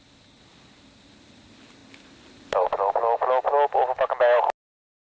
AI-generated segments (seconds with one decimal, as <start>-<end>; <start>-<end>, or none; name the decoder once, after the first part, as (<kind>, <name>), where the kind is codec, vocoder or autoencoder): none